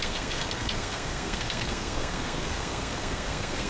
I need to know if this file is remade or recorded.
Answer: remade